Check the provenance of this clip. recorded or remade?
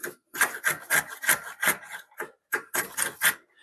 recorded